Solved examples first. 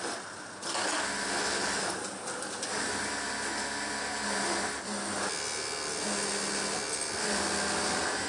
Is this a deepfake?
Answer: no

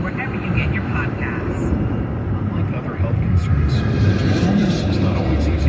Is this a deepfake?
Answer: yes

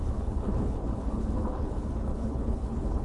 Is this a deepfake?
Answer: yes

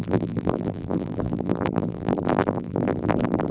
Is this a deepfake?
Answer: yes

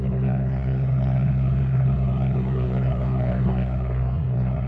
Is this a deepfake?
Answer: yes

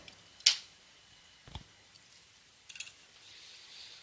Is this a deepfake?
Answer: no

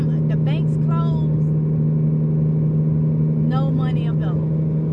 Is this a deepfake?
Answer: no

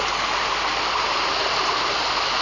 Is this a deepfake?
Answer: no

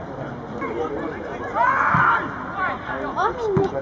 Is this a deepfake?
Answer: no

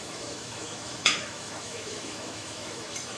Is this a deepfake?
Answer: yes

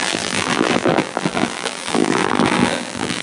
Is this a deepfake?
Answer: yes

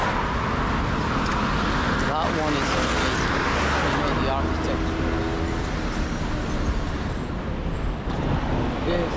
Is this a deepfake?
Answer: no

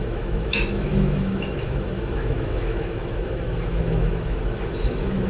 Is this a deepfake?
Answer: yes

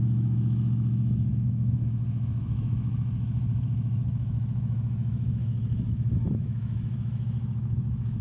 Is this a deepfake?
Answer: yes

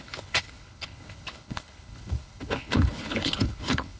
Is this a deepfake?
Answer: yes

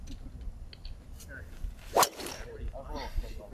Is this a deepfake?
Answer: no